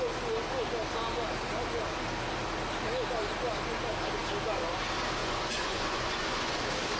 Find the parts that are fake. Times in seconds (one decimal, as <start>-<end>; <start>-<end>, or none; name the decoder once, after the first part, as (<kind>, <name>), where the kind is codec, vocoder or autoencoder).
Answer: 5.2-6.6 (vocoder, Vocos)